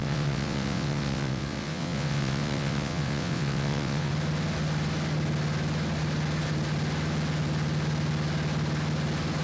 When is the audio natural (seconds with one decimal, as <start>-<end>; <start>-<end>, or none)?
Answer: 4.1-9.4